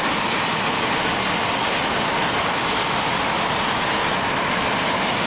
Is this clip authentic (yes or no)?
yes